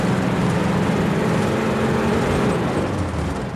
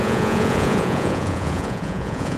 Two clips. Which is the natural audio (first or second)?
first